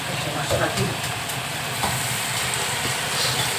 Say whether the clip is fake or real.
fake